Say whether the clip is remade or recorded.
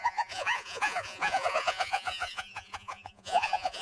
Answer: remade